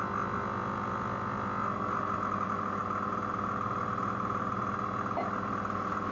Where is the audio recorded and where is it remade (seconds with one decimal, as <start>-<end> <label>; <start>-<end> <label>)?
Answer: 0.0-6.1 recorded